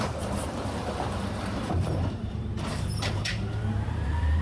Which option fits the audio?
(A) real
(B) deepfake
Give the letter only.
B